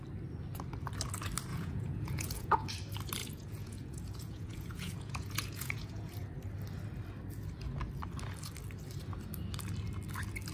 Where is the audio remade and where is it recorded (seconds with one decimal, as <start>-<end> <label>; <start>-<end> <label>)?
0.0-1.5 recorded; 1.5-2.7 remade; 2.7-3.2 recorded; 3.2-6.1 remade; 6.1-10.5 recorded